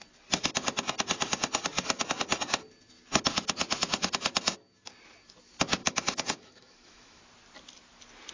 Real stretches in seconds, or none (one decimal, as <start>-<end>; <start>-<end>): 0.0-5.8; 7.2-8.3